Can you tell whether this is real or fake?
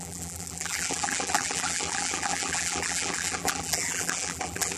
fake